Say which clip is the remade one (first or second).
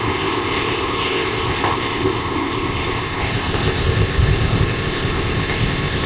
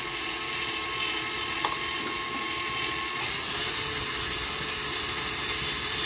first